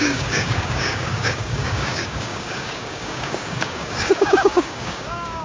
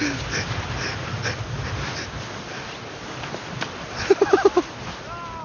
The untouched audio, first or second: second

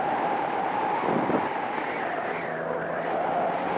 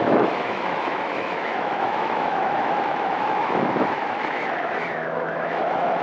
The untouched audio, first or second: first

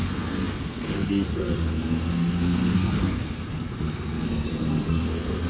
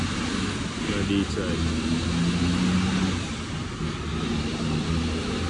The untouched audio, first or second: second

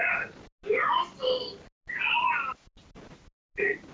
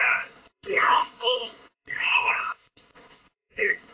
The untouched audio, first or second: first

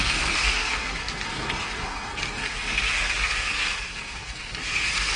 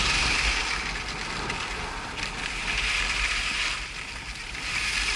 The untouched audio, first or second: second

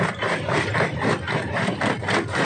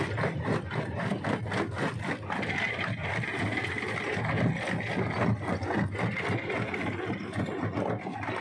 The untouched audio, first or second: second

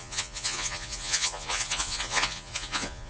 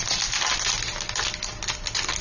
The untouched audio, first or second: second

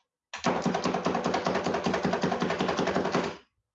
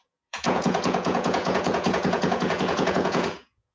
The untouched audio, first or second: first